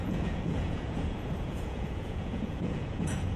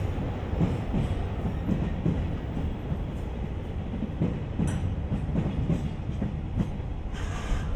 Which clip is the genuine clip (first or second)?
second